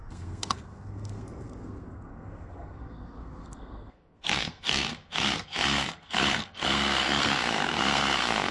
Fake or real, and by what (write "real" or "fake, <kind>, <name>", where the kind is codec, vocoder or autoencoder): fake, codec, SNAC